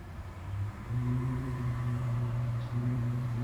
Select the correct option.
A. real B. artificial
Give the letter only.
B